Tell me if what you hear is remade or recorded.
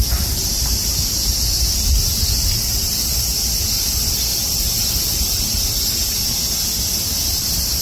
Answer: recorded